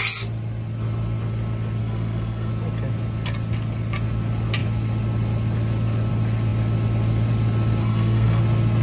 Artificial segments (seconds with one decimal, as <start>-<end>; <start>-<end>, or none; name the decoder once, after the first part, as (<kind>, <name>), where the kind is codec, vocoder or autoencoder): 1.8-2.5 (codec, SNAC); 7.8-8.4